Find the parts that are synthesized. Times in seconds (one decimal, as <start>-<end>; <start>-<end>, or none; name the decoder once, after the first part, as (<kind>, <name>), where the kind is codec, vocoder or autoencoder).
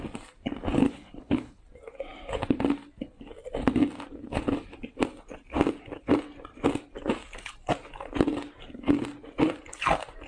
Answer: 0.8-1.6 (codec, HILCodec)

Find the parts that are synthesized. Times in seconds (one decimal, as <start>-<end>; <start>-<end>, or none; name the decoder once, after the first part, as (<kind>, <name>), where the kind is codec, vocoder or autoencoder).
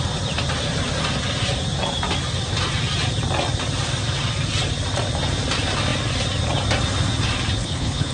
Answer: 7.6-8.1 (codec, HILCodec)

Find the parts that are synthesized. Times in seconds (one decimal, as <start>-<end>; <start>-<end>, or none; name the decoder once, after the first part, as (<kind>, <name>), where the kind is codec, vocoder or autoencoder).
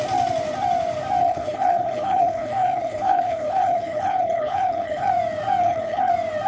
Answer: 1.2-5.1 (codec, HILCodec); 5.6-6.1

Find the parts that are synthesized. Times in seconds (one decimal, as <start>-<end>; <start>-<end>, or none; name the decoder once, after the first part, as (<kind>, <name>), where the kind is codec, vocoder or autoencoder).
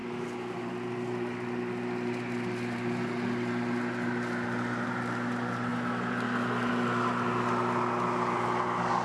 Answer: none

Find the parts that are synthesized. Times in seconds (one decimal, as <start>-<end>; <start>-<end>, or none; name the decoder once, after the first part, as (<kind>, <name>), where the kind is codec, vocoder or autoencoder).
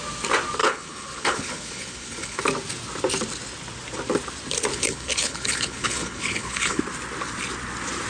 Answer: 0.6-2.4 (codec, HILCodec); 4.7-6.8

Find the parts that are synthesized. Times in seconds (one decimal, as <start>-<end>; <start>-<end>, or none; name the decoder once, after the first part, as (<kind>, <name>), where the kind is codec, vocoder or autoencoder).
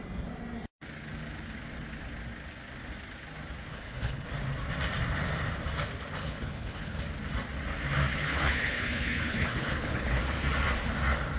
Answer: 3.7-4.3 (codec, HILCodec); 6.2-7.0; 8.1-10.2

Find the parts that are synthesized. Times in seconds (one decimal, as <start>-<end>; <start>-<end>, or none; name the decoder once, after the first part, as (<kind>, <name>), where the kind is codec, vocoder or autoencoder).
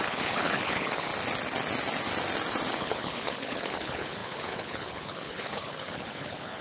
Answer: 0.0-1.1 (codec, HILCodec); 2.8-6.6